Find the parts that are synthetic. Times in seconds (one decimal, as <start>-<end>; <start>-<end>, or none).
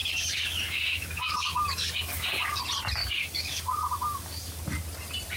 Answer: 0.0-2.6; 3.0-4.6